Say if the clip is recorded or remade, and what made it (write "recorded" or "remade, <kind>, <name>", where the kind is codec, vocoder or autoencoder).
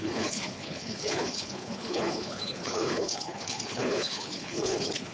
remade, codec, HILCodec